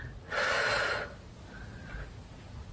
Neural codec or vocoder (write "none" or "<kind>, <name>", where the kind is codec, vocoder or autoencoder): none